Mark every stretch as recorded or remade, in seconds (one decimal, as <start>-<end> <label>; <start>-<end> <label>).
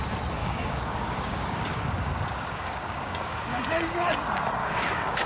0.0-0.4 recorded; 0.4-3.6 remade; 3.6-4.6 recorded; 4.6-5.3 remade